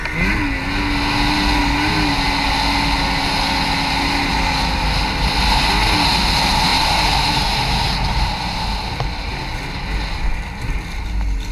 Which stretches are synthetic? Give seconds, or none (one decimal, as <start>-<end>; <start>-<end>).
6.7-8.2